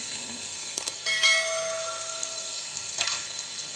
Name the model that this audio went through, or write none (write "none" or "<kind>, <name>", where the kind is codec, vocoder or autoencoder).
codec, SNAC